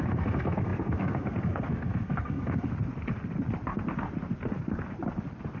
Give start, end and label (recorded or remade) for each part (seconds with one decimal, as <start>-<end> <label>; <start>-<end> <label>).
0.0-2.7 remade; 2.7-5.6 recorded